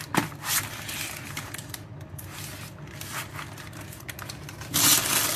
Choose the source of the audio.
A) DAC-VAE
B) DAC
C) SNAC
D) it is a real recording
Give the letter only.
D